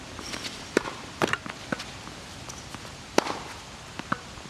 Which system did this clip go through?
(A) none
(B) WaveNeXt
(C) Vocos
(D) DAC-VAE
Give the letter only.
A